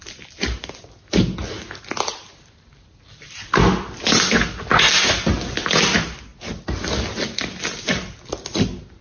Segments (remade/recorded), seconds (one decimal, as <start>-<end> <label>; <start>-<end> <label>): 0.0-9.0 recorded